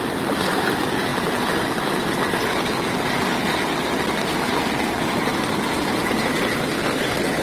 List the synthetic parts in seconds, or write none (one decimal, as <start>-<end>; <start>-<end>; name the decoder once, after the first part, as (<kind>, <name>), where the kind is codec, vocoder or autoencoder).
5.3-5.9 (vocoder, BigVGAN v2)